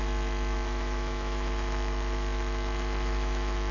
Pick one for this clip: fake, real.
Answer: fake